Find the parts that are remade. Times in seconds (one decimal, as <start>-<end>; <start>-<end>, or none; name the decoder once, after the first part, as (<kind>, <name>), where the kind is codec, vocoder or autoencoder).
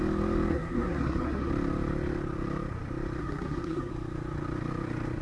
0.5-1.5 (codec, SNAC); 3.2-3.9